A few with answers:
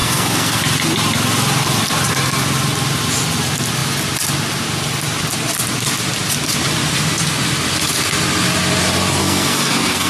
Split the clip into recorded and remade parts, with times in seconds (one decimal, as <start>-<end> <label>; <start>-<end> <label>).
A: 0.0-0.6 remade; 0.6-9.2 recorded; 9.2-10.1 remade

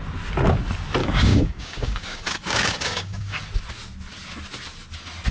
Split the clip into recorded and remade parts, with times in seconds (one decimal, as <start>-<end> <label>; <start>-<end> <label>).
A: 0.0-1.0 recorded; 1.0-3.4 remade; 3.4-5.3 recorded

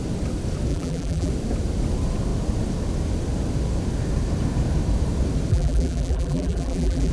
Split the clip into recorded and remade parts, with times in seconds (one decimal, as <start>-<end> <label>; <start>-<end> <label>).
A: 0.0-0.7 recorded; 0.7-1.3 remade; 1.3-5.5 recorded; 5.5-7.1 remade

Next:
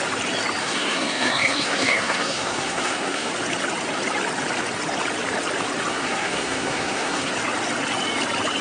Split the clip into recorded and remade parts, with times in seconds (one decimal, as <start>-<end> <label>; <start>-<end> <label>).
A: 0.0-0.6 recorded; 0.6-3.3 remade; 3.3-5.9 recorded; 5.9-7.3 remade; 7.3-8.6 recorded